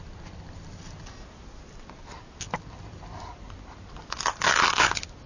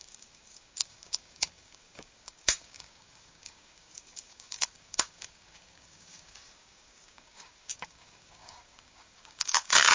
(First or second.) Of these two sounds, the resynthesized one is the second